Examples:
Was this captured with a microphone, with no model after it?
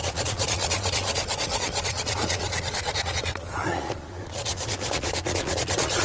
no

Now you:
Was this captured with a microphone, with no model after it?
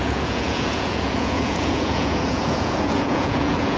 no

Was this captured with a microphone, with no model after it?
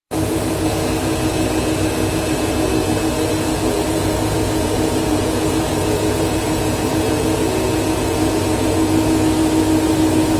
no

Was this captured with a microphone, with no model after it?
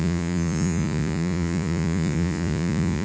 no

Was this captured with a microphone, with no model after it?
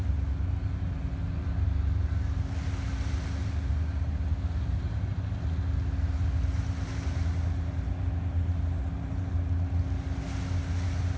yes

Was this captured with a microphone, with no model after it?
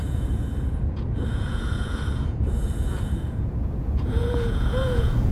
no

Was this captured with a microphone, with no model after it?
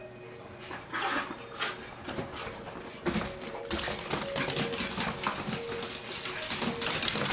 yes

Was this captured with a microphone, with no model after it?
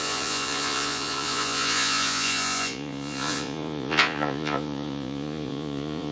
no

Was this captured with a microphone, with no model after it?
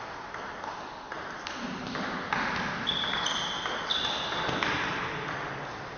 yes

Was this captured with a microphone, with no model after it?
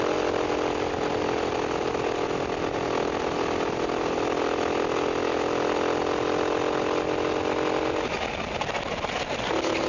yes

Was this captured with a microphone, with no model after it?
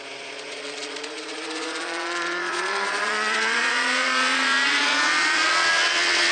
no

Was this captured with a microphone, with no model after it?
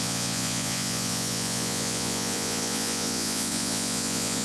no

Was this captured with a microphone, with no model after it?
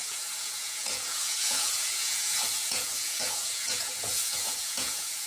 no